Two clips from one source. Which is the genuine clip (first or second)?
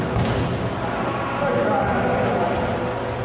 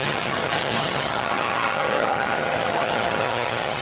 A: first